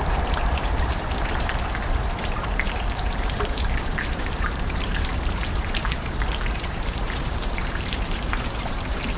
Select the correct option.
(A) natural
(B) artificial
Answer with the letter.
B